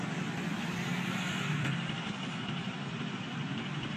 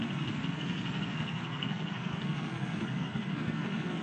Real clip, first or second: first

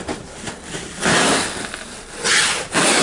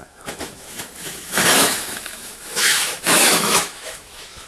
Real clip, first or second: first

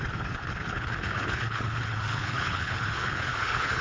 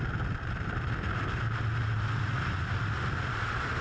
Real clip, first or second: second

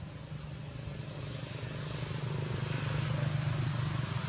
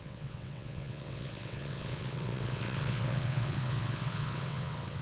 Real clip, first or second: first